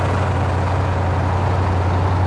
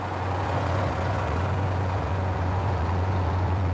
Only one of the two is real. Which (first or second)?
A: first